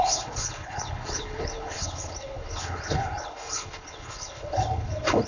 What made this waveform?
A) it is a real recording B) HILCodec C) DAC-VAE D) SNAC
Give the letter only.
B